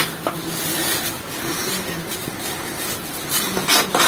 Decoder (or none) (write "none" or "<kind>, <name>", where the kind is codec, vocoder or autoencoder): none